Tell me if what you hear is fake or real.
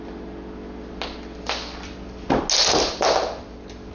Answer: real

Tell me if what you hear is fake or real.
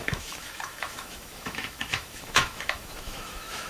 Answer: fake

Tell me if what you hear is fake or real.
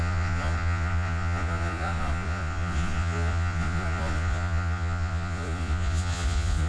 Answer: fake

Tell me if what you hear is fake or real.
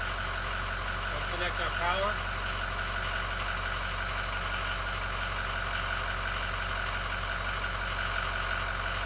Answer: real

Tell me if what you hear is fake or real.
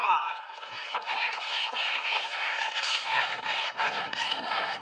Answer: fake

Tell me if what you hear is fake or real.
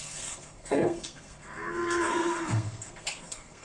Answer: fake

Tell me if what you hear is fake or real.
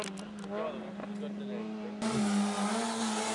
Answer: real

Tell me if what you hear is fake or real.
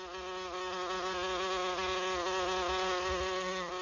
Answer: real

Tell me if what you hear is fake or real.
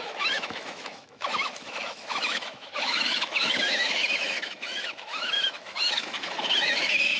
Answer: fake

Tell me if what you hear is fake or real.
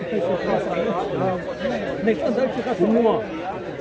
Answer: real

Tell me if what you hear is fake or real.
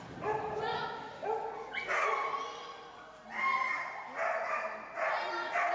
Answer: real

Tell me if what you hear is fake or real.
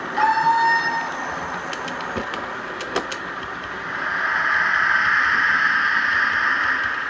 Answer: real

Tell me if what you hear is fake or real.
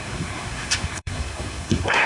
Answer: fake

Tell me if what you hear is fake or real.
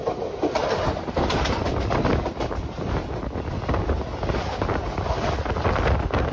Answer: real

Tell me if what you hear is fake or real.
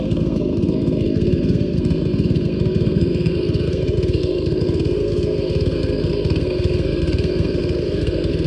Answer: fake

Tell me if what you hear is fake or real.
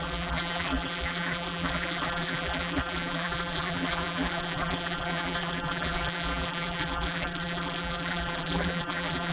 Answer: fake